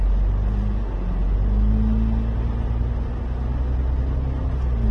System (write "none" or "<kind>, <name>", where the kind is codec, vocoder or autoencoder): none